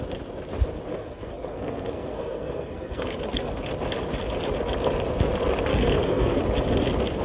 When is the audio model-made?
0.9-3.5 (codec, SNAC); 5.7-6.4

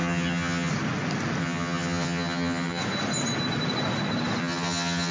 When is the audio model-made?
0.0-0.7 (vocoder, HiFi-GAN); 1.4-2.8; 4.4-5.1

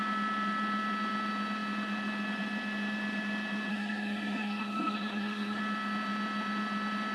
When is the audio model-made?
3.7-5.6 (codec, SNAC)

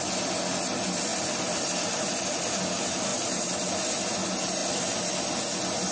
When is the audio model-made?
1.1-2.4 (vocoder, BigVGAN v2); 3.1-3.9; 4.6-5.1

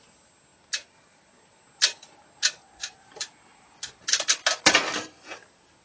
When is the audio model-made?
2.8-3.7 (vocoder, BigVGAN v2)

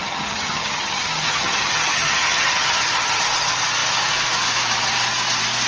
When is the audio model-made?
0.0-3.2 (vocoder, HiFi-GAN)

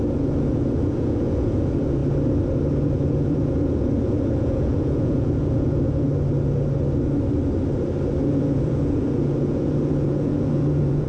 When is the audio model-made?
0.0-2.0 (vocoder, Vocos); 2.8-6.1; 8.3-11.1